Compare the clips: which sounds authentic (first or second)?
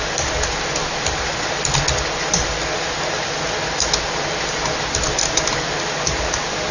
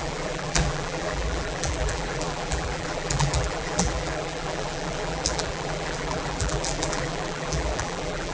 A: first